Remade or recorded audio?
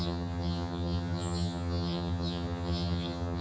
remade